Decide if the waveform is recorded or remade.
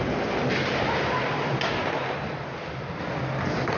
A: recorded